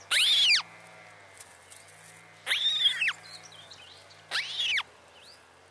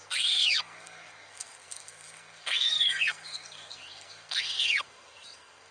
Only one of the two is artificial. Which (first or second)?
second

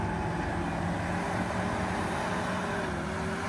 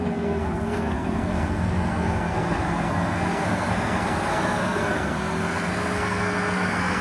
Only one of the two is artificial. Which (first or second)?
second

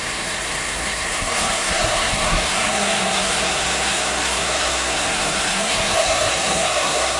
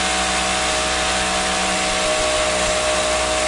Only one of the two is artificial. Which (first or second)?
first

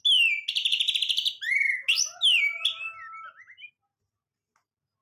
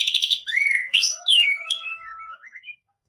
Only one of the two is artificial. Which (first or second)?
second